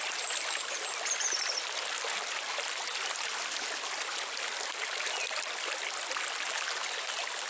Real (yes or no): yes